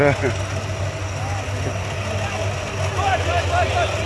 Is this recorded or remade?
recorded